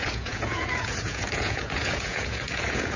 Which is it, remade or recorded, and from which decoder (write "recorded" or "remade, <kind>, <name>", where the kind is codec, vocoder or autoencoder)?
remade, vocoder, Vocos